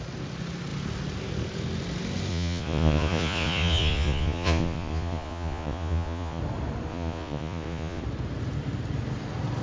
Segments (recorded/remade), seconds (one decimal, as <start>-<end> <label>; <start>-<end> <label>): 0.0-2.3 recorded; 2.3-6.4 remade; 6.4-6.9 recorded; 6.9-8.0 remade; 8.0-9.6 recorded